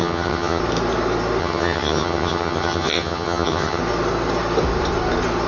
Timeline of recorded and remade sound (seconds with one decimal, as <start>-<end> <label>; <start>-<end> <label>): 0.0-0.6 remade; 0.6-1.4 recorded; 1.4-3.8 remade; 3.8-5.5 recorded